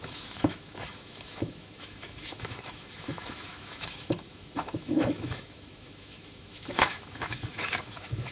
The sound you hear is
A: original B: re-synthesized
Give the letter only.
B